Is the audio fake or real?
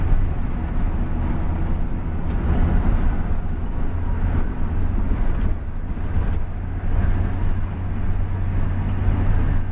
real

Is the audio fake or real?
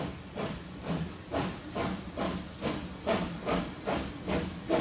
real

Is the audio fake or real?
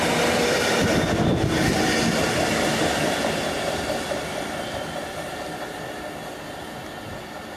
real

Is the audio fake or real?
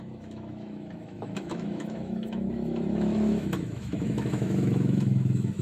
fake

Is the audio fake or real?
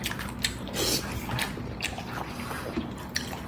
real